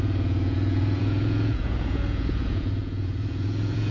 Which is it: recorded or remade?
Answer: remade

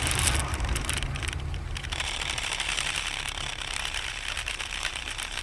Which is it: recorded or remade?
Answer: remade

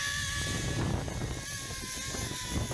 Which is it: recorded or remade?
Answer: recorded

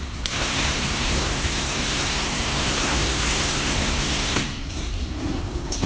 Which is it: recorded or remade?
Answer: remade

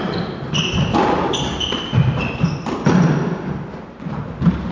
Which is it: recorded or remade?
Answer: recorded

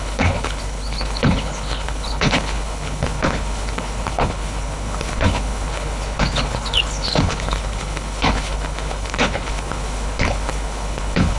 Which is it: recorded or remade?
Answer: remade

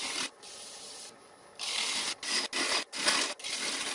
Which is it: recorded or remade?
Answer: recorded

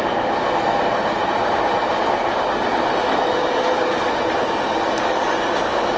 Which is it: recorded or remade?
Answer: recorded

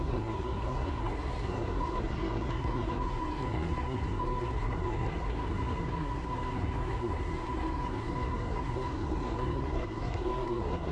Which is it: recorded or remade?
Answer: remade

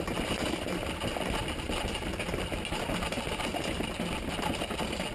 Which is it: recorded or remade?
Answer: recorded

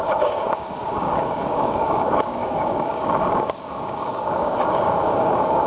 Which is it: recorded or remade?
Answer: remade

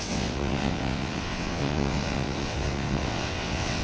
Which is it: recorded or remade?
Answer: remade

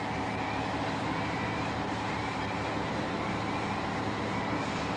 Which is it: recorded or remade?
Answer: recorded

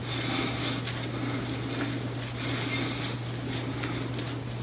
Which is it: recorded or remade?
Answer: recorded